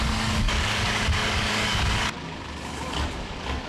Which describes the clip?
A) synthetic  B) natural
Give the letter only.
A